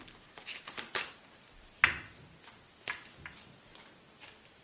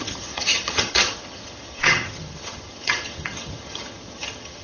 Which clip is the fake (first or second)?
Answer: second